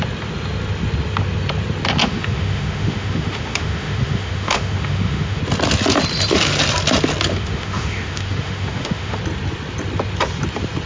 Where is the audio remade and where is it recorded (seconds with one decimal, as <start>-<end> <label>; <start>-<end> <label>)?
0.0-2.0 recorded; 2.0-5.4 remade; 5.4-7.3 recorded; 7.3-9.2 remade; 9.2-10.9 recorded

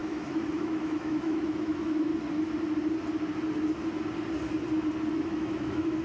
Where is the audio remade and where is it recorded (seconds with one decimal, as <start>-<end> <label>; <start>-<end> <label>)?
0.0-2.1 remade; 2.1-5.1 recorded; 5.1-6.0 remade

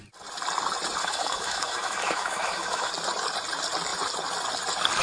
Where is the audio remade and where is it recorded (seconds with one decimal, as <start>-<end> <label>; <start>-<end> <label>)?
0.0-1.0 recorded; 1.0-2.9 remade; 2.9-5.0 recorded

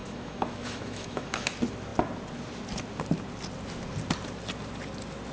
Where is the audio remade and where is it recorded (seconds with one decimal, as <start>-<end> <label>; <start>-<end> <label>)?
0.0-1.5 remade; 1.5-5.3 recorded

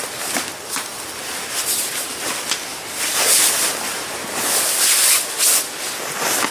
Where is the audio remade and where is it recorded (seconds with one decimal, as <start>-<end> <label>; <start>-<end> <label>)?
0.0-6.5 recorded

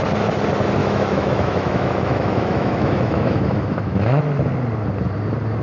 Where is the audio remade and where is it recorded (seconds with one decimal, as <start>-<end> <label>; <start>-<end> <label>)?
0.0-0.8 recorded; 0.8-4.2 remade; 4.2-5.6 recorded

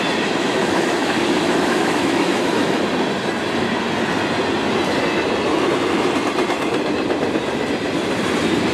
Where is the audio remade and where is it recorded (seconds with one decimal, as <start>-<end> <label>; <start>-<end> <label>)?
0.0-0.4 recorded; 0.4-2.8 remade; 2.8-8.7 recorded

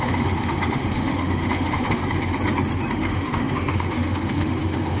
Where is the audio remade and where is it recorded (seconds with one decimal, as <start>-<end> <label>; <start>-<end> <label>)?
0.0-2.0 remade; 2.0-2.9 recorded; 2.9-5.0 remade